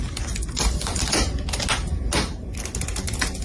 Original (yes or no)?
yes